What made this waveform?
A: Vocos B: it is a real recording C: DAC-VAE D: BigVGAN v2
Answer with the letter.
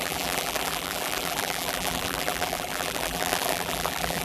D